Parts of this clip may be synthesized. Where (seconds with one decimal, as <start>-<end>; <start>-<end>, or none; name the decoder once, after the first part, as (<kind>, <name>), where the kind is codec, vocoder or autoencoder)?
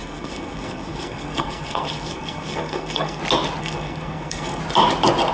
0.0-3.2 (codec, SNAC); 3.6-4.6